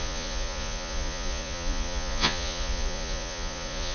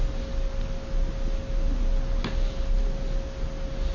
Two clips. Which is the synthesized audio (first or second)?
first